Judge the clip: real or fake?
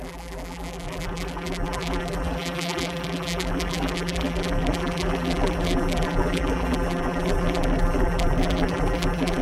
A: fake